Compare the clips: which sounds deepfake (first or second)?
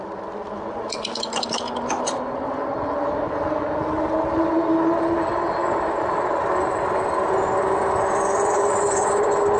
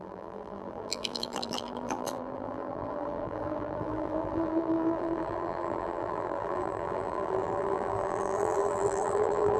second